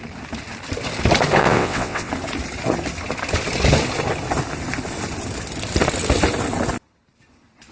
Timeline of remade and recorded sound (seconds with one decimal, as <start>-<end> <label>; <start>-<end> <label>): 0.0-1.4 recorded; 1.4-2.1 remade; 2.1-7.7 recorded